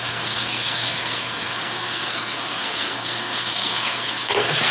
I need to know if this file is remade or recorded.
remade